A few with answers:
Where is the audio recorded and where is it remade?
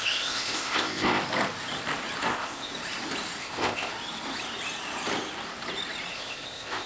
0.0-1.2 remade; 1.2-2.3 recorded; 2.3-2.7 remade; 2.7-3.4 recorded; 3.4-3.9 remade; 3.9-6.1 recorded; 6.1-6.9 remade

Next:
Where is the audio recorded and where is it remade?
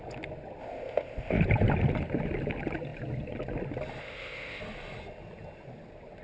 0.0-0.6 recorded; 0.6-1.4 remade; 1.4-4.0 recorded; 4.0-4.6 remade; 4.6-6.2 recorded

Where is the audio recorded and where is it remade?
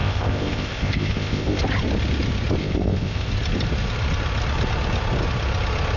0.0-1.6 remade; 1.6-2.6 recorded; 2.6-3.3 remade; 3.3-6.0 recorded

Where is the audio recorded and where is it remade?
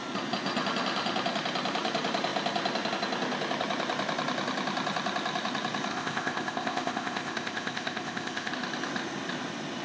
0.0-5.9 recorded; 5.9-8.5 remade; 8.5-9.8 recorded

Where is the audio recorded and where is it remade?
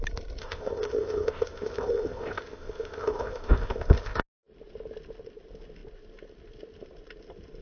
0.0-0.4 recorded; 0.4-4.2 remade; 4.2-7.6 recorded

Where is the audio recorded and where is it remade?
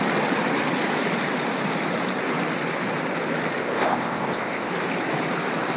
0.0-3.6 recorded; 3.6-4.7 remade; 4.7-5.8 recorded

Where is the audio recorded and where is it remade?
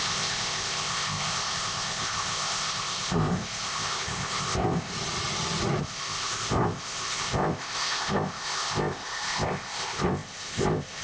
0.0-4.9 remade; 4.9-5.8 recorded; 5.8-11.0 remade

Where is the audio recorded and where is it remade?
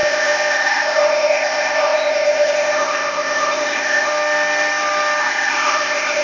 0.0-4.1 remade; 4.1-5.2 recorded; 5.2-6.2 remade